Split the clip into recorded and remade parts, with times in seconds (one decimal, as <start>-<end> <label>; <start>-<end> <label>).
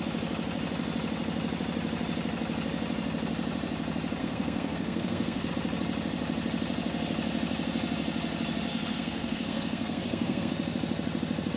0.0-4.2 recorded; 4.2-5.5 remade; 5.5-8.7 recorded; 8.7-10.5 remade; 10.5-11.6 recorded